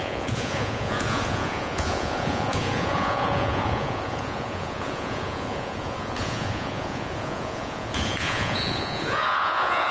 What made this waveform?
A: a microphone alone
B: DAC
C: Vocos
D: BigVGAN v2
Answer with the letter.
C